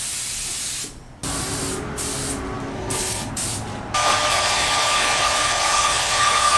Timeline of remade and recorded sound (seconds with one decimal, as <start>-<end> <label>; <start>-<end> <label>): 0.0-2.7 recorded; 2.7-3.3 remade; 3.3-4.3 recorded; 4.3-6.6 remade